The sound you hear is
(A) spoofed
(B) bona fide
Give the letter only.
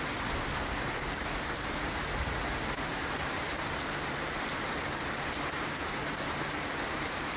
B